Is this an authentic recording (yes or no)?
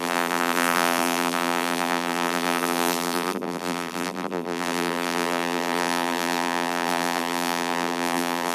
no